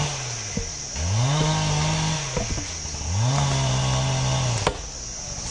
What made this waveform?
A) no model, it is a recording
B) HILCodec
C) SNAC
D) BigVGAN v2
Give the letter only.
A